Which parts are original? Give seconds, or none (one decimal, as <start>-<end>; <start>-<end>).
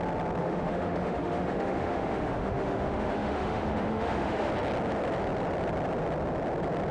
0.0-0.4; 4.5-6.9